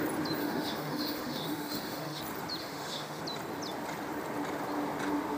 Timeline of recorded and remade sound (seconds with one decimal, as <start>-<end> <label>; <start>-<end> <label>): 0.0-0.4 recorded; 0.4-2.2 remade; 2.2-2.6 recorded; 2.6-3.2 remade; 3.2-5.4 recorded